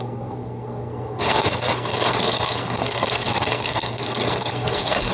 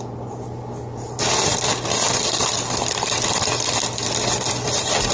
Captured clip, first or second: second